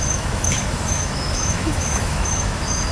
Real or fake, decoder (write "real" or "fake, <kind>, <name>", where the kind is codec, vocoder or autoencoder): fake, autoencoder, DAC-VAE